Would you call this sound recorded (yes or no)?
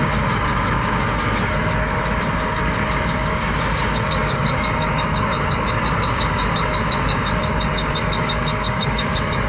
no